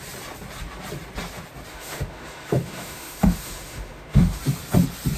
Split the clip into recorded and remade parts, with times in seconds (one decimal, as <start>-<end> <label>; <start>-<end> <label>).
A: 0.0-1.7 recorded; 1.7-4.4 remade; 4.4-5.2 recorded